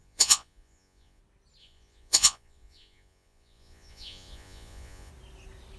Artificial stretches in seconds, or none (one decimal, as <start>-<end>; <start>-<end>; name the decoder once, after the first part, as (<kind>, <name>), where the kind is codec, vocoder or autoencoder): 0.0-1.2 (vocoder, Vocos); 1.6-5.1